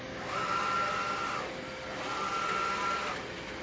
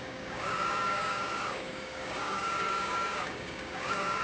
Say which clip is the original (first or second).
first